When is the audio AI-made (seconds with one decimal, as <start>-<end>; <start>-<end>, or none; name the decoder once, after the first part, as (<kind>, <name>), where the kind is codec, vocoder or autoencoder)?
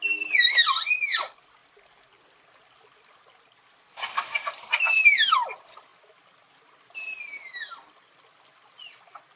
none